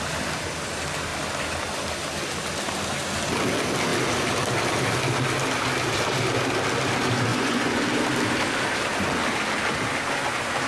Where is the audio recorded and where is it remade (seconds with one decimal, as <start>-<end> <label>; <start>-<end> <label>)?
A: 0.0-7.3 recorded; 7.3-7.8 remade; 7.8-10.7 recorded